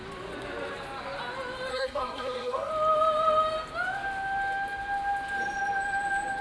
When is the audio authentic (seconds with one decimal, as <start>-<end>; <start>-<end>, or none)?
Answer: 0.0-1.7; 2.7-6.4